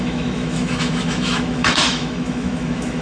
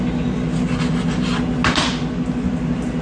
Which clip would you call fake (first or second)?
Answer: first